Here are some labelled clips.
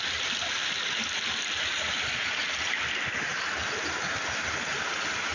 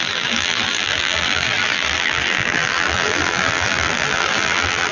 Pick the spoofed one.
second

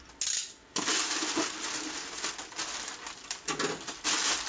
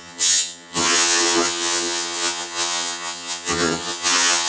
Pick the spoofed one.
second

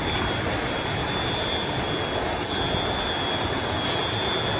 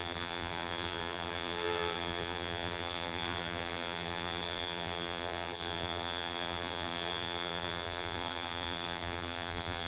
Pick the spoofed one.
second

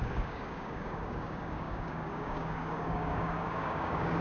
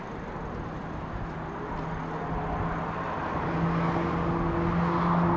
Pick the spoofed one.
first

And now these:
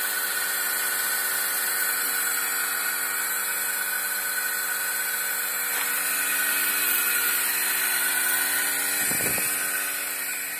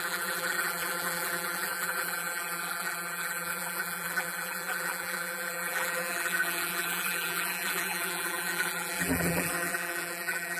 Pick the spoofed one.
second